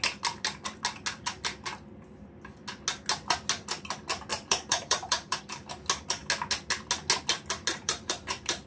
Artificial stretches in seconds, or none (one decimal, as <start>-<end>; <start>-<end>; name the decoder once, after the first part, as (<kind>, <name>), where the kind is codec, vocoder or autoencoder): 4.3-5.4 (vocoder, BigVGAN v2); 7.7-8.7